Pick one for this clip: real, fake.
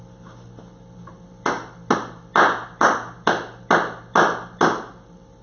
real